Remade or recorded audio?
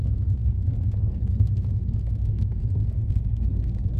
remade